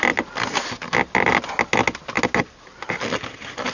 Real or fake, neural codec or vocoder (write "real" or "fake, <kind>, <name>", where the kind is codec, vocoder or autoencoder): real